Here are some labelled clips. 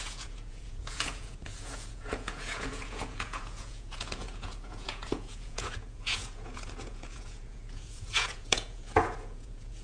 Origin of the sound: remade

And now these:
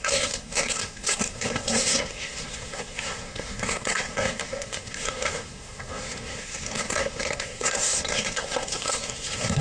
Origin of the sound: remade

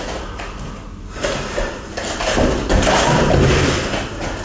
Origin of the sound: recorded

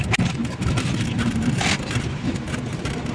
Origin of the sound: recorded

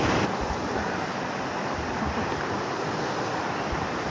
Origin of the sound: recorded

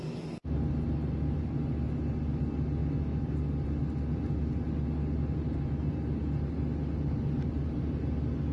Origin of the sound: recorded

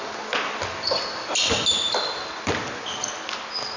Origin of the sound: recorded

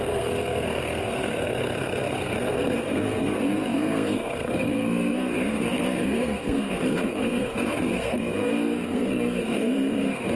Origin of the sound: remade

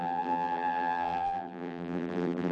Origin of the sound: remade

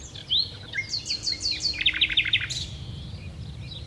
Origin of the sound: recorded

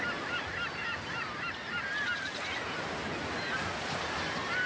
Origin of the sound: recorded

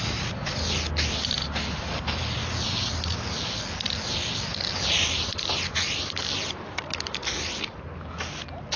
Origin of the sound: recorded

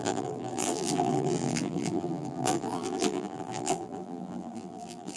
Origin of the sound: remade